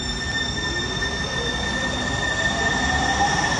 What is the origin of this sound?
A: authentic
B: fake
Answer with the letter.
A